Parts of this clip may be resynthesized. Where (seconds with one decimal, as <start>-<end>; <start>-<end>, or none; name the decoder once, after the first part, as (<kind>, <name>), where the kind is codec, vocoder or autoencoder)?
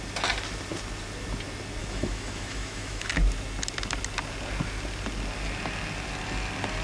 1.8-3.1 (autoencoder, DAC-VAE)